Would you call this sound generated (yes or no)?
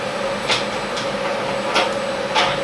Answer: no